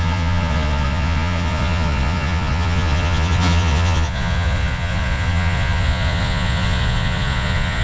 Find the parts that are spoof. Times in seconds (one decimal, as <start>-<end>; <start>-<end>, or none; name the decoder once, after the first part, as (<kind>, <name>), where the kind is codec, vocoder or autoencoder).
0.0-7.8 (vocoder, Vocos)